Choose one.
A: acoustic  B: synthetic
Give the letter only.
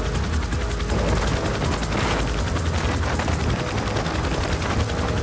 A